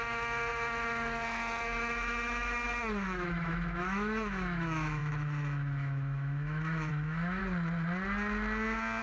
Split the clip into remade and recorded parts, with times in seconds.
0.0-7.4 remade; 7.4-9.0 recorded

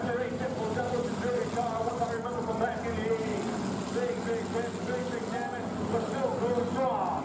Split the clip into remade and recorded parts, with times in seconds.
0.0-1.4 remade; 1.4-1.9 recorded; 1.9-3.3 remade; 3.3-7.2 recorded

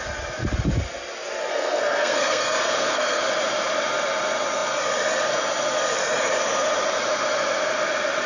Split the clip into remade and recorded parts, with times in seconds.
0.0-1.5 recorded; 1.5-3.2 remade; 3.2-8.3 recorded

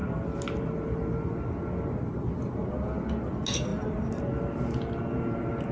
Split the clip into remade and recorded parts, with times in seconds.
0.0-5.7 recorded

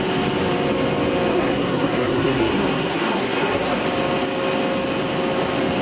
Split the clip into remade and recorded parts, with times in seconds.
0.0-1.3 recorded; 1.3-3.8 remade; 3.8-5.8 recorded

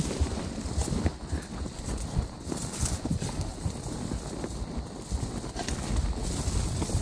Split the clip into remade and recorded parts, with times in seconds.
0.0-7.0 recorded

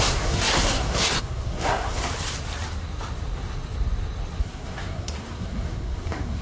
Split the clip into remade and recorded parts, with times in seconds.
0.0-2.0 remade; 2.0-4.4 recorded; 4.4-6.4 remade

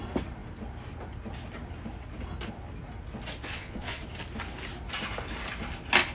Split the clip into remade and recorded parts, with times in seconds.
0.0-3.4 recorded; 3.4-4.0 remade; 4.0-6.1 recorded